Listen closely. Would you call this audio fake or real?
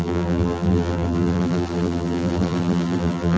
fake